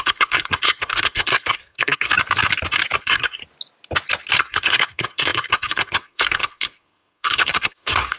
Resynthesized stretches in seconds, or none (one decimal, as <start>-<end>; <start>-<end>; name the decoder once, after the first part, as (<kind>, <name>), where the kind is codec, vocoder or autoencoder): 0.0-2.1 (codec, SNAC); 3.0-3.4; 4.4-8.2